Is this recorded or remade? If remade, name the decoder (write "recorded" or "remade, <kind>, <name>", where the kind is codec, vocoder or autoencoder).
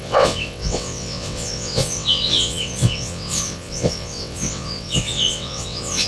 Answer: remade, vocoder, WaveNeXt